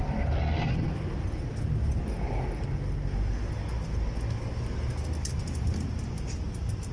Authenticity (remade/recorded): recorded